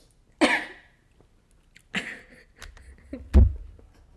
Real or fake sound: real